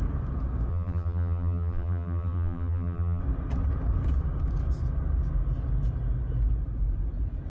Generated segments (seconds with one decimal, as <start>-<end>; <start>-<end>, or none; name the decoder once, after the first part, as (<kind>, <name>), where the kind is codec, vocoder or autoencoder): 0.7-3.2 (vocoder, BigVGAN v2)